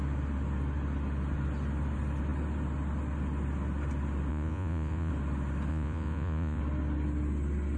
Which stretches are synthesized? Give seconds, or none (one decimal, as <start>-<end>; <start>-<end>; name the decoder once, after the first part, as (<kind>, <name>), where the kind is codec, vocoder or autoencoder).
4.3-5.1 (vocoder, Vocos); 5.7-6.6